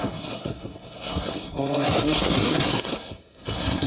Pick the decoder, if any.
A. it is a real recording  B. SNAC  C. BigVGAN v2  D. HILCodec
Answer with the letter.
B